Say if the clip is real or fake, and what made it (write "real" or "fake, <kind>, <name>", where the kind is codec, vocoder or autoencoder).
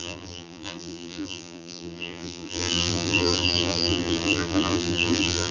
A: fake, vocoder, BigVGAN v2